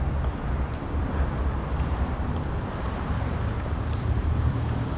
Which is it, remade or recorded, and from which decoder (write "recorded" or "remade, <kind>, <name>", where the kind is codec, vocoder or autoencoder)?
remade, vocoder, BigVGAN v2